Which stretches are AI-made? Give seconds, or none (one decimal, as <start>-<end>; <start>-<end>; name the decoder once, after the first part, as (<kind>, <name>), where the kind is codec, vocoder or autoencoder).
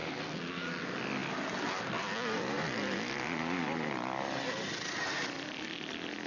none